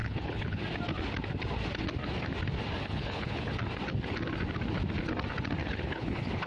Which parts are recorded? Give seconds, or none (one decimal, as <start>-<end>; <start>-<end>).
0.6-2.8; 3.5-5.6